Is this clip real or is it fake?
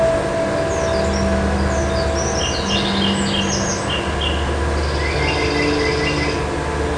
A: real